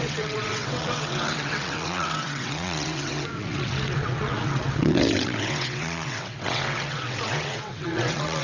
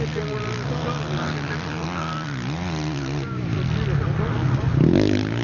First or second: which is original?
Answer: second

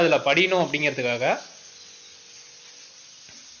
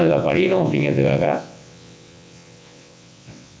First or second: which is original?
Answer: first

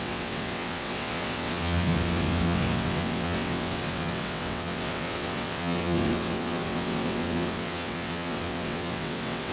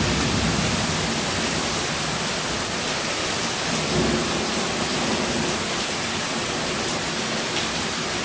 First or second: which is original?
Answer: second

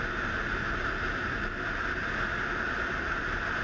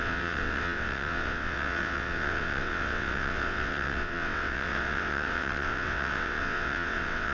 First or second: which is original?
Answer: first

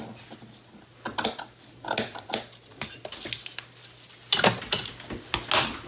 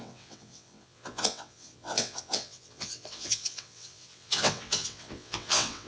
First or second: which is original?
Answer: first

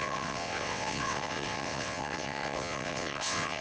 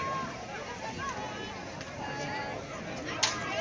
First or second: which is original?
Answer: second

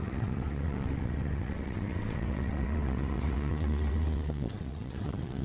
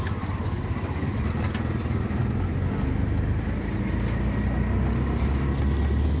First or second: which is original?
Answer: second